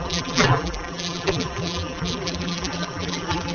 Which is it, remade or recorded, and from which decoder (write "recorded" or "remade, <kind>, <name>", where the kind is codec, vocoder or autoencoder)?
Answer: remade, vocoder, BigVGAN v2